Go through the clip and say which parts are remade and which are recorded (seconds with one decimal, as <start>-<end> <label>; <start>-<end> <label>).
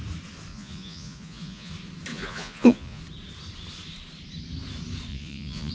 0.0-0.5 recorded; 0.5-1.7 remade; 1.7-2.1 recorded; 2.1-3.0 remade; 3.0-5.1 recorded; 5.1-5.7 remade